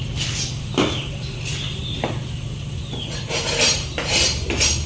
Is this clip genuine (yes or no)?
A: yes